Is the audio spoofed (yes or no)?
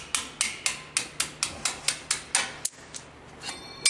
no